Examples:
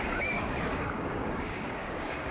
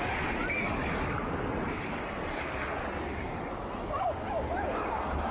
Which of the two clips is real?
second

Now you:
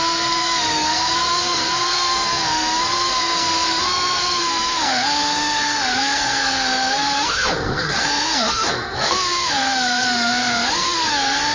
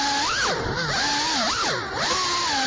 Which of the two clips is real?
second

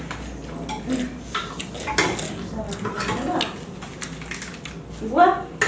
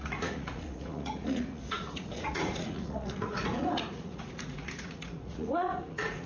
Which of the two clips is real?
first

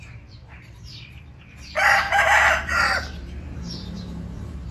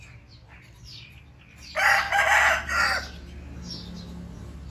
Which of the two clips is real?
second